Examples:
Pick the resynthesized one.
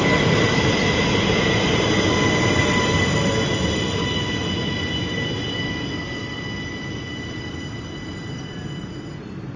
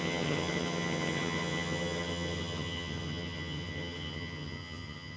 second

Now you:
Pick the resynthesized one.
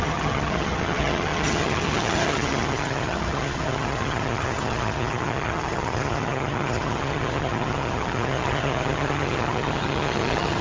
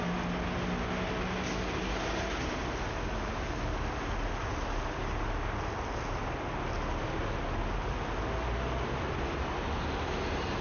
first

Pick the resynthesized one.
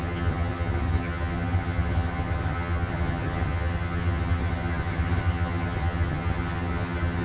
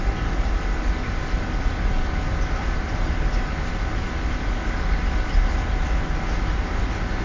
first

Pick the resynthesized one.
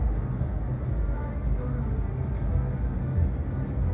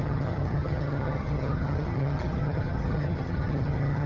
second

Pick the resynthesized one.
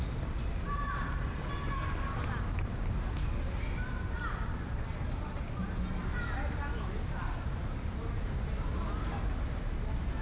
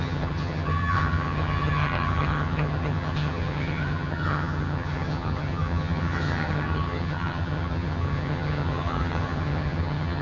second